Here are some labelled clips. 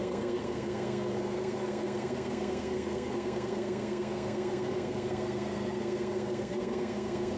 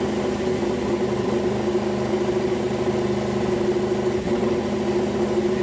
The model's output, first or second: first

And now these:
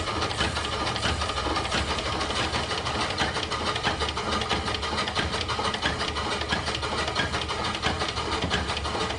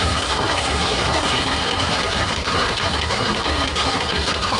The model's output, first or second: second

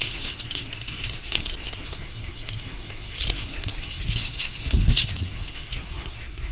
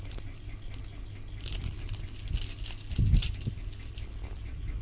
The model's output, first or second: first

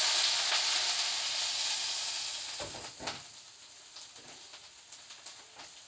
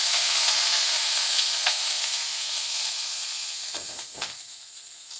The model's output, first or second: second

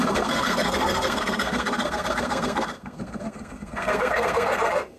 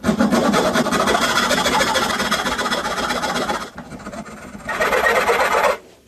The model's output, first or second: first